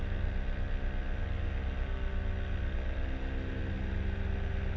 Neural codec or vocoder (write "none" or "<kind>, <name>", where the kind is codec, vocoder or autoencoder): none